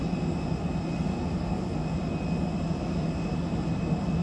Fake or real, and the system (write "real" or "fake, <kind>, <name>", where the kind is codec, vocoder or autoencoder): real